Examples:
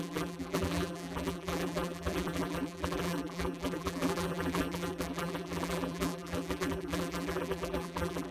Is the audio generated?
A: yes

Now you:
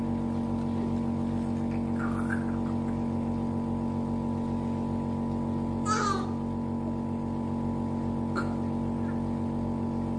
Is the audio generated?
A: no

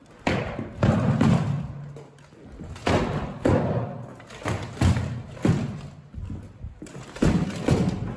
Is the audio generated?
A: no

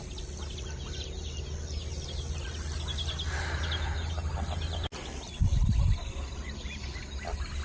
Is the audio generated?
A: no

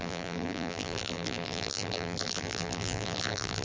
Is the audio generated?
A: yes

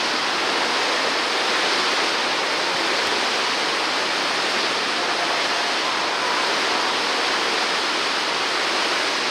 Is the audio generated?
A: no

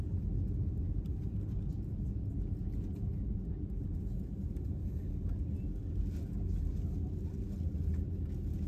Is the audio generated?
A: no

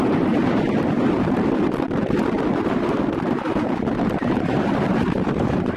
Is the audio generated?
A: yes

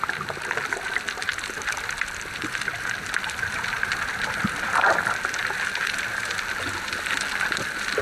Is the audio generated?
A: yes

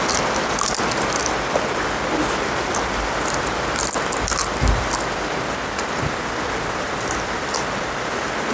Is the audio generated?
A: no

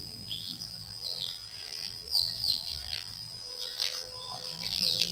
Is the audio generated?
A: yes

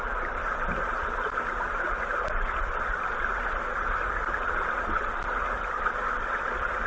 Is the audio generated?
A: no